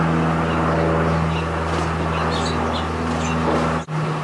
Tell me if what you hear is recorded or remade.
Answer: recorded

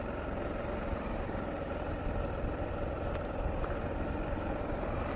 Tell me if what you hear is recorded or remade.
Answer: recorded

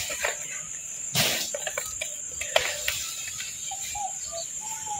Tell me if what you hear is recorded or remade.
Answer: remade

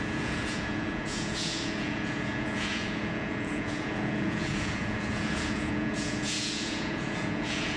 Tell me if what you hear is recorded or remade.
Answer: remade